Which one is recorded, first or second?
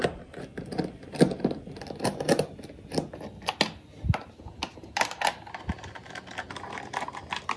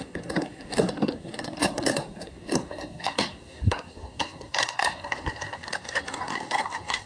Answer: first